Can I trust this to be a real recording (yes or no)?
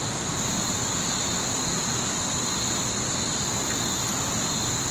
yes